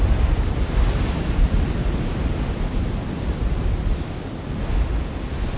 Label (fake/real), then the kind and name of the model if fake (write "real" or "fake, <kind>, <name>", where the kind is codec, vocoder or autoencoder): real